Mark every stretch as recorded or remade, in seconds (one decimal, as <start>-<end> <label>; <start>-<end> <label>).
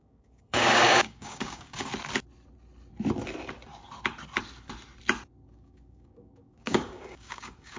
0.0-1.9 remade; 1.9-5.5 recorded; 5.5-7.8 remade